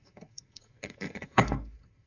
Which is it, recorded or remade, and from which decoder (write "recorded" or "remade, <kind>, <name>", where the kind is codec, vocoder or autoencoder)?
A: remade, codec, SNAC